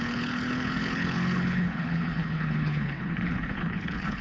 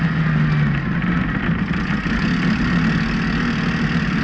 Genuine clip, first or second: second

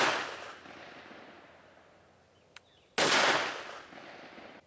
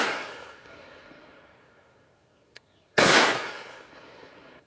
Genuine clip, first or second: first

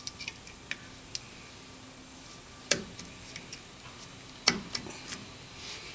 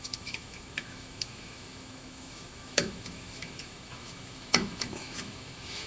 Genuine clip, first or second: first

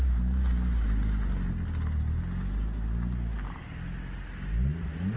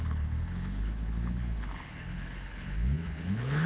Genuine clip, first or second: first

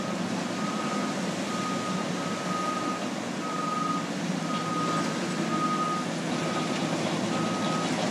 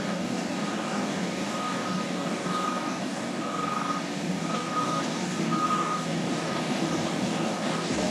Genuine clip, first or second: first